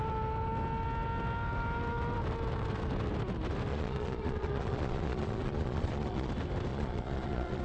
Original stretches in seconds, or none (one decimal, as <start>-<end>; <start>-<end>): 0.0-3.7; 6.3-6.7